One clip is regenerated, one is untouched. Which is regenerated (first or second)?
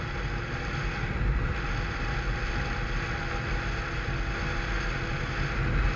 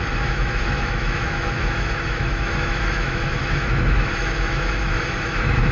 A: second